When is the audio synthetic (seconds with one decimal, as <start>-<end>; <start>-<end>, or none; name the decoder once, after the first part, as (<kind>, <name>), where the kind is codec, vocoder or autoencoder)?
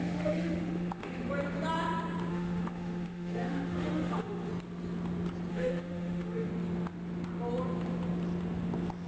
0.0-1.3 (autoencoder, DAC-VAE); 2.3-4.5; 5.5-6.5